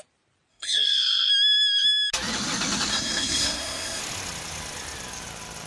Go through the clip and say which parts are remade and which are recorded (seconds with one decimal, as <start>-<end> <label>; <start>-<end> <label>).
0.0-0.5 recorded; 0.5-1.3 remade; 1.3-2.9 recorded; 2.9-4.0 remade; 4.0-5.7 recorded